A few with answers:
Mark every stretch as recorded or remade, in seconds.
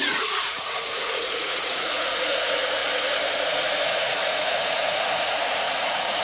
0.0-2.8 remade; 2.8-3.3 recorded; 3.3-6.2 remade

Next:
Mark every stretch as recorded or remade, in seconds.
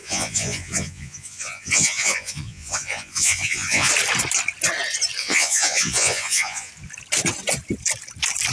0.0-3.9 remade; 3.9-5.2 recorded; 5.2-6.7 remade; 6.7-8.5 recorded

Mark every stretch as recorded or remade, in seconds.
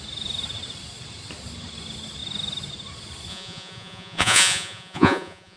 0.0-3.3 recorded; 3.3-5.6 remade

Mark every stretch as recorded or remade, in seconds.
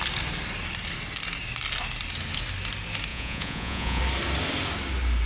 0.0-3.1 recorded; 3.1-4.0 remade; 4.0-5.3 recorded